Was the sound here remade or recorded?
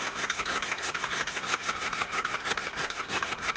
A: remade